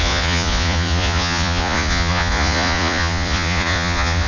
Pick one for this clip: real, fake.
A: fake